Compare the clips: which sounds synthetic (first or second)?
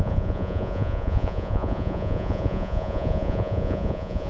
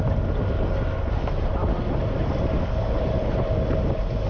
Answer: first